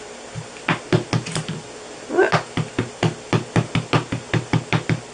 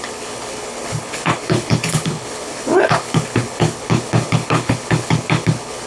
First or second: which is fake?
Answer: second